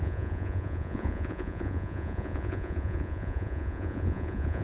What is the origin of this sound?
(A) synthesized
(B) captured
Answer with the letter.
A